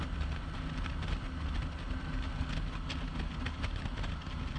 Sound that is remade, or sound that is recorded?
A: recorded